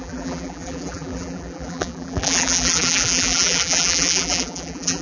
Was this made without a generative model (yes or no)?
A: no